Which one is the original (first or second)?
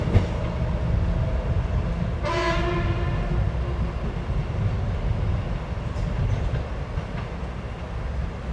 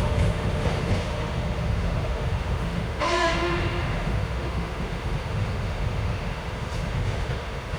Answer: first